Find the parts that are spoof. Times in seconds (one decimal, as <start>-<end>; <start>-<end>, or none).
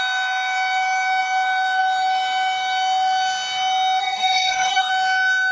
4.0-4.9